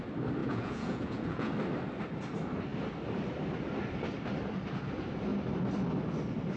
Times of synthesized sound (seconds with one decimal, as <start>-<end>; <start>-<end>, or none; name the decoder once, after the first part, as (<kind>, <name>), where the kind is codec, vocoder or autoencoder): 0.4-1.5 (vocoder, Vocos)